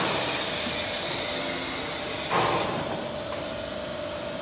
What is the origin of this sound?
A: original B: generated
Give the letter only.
A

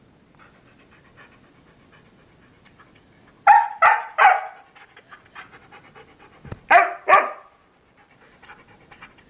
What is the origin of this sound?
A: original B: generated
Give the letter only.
A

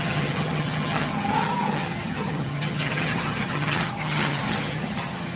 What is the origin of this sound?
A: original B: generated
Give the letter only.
B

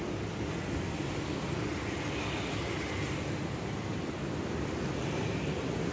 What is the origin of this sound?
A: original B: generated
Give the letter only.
A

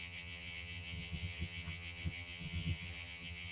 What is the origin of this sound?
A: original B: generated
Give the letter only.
B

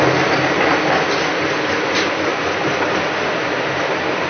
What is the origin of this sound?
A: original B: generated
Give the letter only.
A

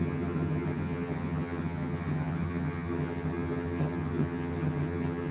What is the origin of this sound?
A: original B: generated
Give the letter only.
B